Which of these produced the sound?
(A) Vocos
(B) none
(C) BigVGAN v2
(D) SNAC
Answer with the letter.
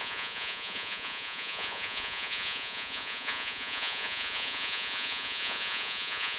A